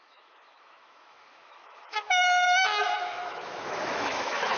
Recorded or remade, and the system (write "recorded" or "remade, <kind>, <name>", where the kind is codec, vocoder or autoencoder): remade, autoencoder, DAC-VAE